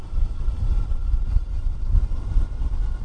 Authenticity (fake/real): real